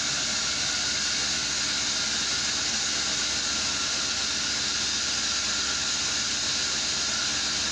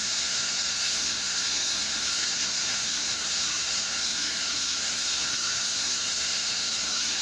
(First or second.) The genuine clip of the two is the first